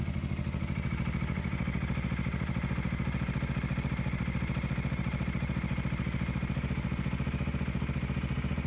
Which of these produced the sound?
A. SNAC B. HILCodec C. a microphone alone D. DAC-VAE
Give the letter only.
C